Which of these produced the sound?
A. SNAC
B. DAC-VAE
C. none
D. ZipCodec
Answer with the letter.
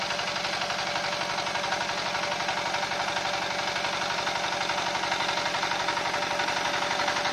C